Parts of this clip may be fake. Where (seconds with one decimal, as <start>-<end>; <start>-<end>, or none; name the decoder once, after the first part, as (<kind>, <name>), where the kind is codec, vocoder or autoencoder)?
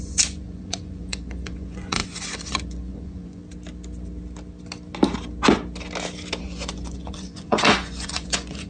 0.0-3.4 (vocoder, Vocos); 6.4-8.7